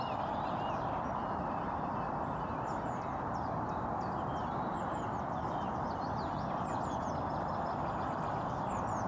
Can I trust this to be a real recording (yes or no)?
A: yes